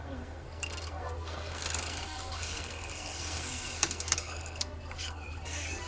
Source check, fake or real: fake